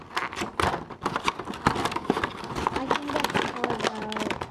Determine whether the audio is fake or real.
real